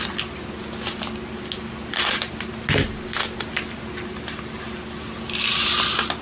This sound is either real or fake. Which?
real